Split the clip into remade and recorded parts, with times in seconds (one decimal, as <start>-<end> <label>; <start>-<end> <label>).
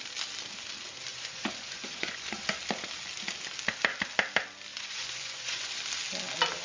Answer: 0.0-1.1 recorded; 1.1-2.6 remade; 2.6-4.7 recorded; 4.7-5.8 remade; 5.8-6.6 recorded